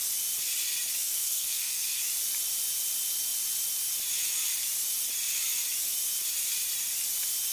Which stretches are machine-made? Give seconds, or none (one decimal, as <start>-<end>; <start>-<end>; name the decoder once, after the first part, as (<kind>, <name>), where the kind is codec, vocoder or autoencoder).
1.0-2.0 (codec, SNAC)